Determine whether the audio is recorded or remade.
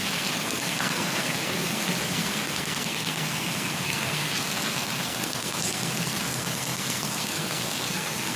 remade